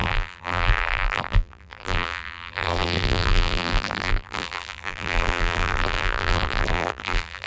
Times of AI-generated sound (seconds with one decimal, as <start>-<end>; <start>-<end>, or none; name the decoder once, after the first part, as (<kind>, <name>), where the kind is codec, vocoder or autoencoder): 0.0-7.5 (vocoder, BigVGAN v2)